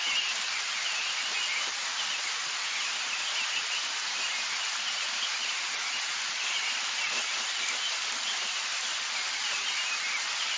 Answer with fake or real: real